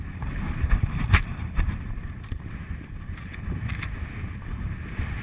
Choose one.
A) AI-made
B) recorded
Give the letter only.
A